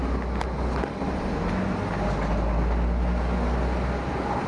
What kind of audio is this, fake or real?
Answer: real